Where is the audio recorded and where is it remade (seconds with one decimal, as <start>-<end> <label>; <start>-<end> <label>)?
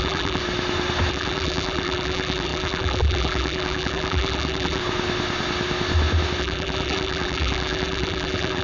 0.0-0.4 remade; 0.4-1.1 recorded; 1.1-4.8 remade; 4.8-6.4 recorded; 6.4-8.6 remade